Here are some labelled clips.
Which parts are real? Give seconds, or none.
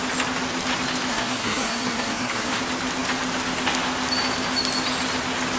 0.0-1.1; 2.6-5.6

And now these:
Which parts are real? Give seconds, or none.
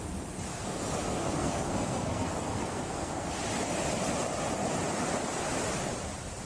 0.0-0.5; 3.3-6.5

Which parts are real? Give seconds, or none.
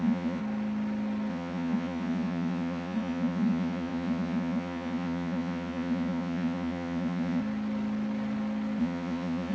0.4-1.3; 7.4-8.8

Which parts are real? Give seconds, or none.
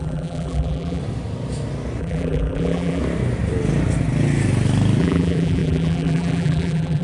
1.0-2.0; 3.0-5.0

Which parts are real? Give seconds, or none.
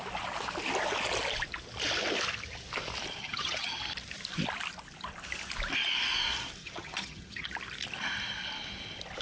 0.0-3.2; 3.8-6.6; 7.5-9.2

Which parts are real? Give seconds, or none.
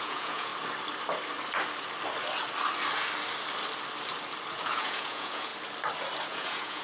0.5-4.6; 5.5-6.3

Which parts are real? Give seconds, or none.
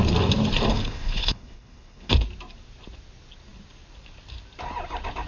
0.0-0.7; 2.1-5.3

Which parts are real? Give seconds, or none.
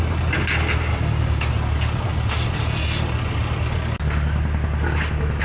0.0-0.9; 1.5-5.4